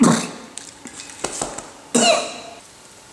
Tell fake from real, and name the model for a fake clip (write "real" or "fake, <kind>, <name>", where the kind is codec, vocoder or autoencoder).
real